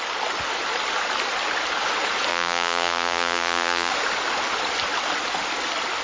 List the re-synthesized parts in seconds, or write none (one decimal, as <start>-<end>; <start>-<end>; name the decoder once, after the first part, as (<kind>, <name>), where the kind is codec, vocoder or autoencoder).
2.3-3.9 (vocoder, BigVGAN v2)